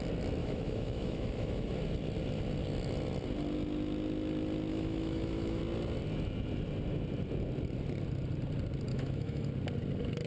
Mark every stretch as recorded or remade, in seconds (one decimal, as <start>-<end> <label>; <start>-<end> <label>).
0.0-0.4 recorded; 0.4-1.7 remade; 1.7-4.7 recorded; 4.7-5.6 remade; 5.6-8.9 recorded; 8.9-9.5 remade; 9.5-10.3 recorded